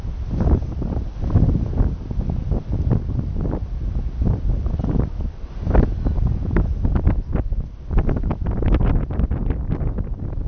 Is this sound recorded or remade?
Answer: recorded